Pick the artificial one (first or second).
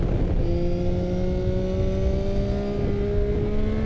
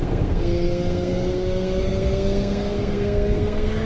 second